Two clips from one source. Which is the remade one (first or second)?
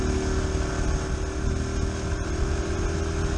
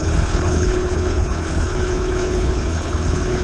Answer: second